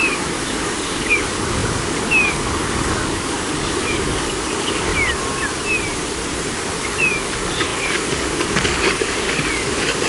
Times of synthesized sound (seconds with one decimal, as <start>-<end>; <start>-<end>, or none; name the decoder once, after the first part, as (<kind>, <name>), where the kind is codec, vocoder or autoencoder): 0.0-4.9 (codec, DAC); 6.8-10.1